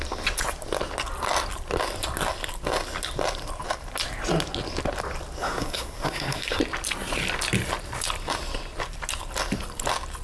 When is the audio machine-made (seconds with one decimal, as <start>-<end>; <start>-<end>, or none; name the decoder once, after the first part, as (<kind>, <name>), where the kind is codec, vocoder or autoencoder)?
5.4-6.6 (codec, SNAC)